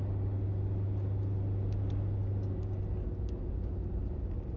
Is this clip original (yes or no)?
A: yes